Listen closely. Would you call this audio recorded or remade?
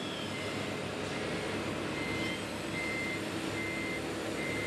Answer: recorded